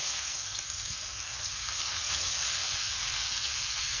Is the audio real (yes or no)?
no